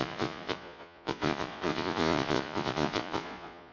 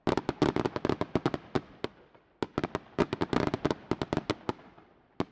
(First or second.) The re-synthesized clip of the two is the first